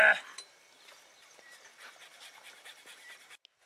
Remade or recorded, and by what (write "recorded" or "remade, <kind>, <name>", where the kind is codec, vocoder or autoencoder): recorded